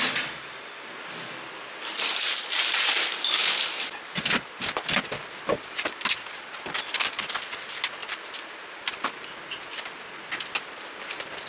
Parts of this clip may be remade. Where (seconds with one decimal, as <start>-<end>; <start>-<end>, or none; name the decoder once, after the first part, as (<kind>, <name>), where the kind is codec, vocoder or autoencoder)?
none